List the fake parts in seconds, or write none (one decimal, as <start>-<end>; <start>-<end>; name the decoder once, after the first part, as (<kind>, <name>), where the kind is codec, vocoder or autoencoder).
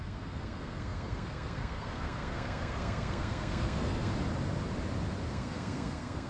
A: 0.0-4.1 (codec, SNAC); 5.3-6.3